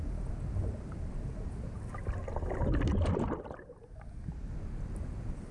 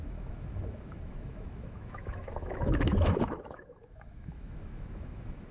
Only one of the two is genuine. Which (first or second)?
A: first